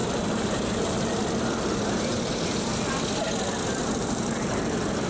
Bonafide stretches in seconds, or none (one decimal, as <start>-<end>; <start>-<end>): 1.2-1.7; 2.7-3.8; 4.5-5.1